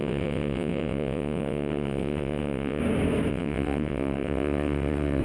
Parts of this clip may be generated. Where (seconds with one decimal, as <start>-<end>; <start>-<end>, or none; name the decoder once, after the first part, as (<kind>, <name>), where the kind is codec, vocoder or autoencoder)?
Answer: 0.0-2.8 (vocoder, WaveNeXt); 3.3-5.2